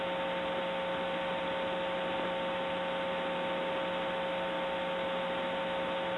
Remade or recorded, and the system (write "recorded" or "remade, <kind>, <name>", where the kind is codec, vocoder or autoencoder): recorded